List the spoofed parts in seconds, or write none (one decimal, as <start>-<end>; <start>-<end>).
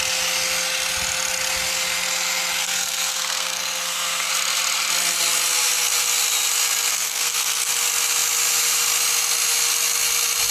2.6-4.3; 6.9-7.7